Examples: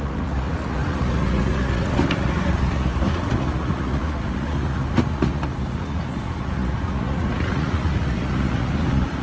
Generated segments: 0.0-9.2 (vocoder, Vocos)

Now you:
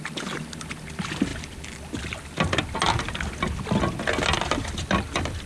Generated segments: none

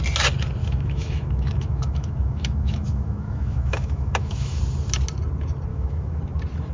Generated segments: 0.6-4.6 (autoencoder, DAC-VAE); 5.7-6.2

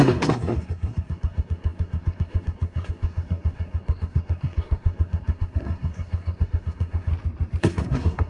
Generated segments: 0.0-7.1 (codec, SNAC); 7.6-8.3

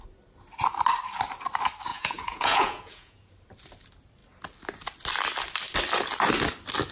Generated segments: 1.9-3.3 (vocoder, Vocos)

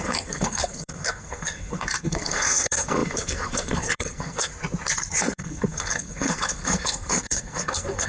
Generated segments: 0.0-4.5 (codec, SNAC); 5.2-8.1

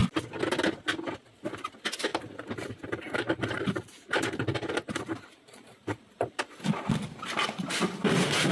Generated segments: 2.1-6.4 (vocoder, BigVGAN v2)